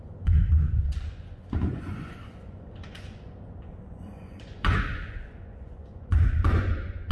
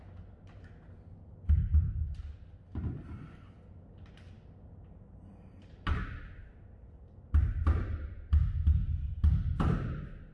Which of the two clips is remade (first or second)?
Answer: first